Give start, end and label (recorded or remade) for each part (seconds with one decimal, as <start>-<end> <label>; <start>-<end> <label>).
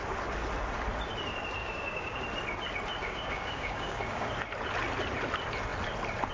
0.0-1.6 recorded; 1.6-2.2 remade; 2.2-3.0 recorded; 3.0-4.3 remade; 4.3-6.3 recorded